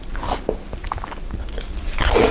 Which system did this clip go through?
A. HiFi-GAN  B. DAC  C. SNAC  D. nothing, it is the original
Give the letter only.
D